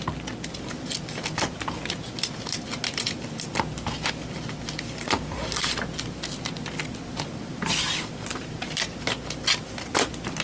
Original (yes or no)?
yes